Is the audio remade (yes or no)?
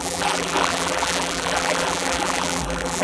yes